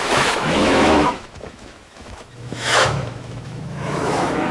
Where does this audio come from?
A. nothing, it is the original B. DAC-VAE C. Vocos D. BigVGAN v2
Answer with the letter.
B